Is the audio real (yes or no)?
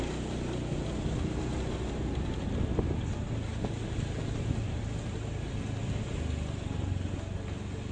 yes